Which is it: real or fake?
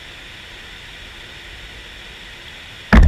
real